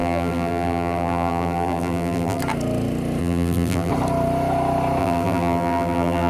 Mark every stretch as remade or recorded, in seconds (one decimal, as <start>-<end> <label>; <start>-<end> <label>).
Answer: 0.0-2.4 remade; 2.4-3.2 recorded; 3.2-3.9 remade; 3.9-5.0 recorded; 5.0-6.3 remade